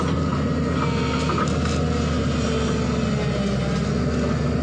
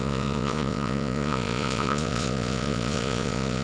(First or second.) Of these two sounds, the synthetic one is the second